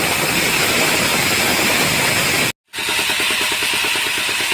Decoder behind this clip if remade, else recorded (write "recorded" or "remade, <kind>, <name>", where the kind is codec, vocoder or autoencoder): recorded